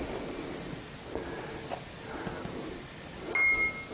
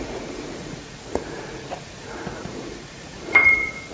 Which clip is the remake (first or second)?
second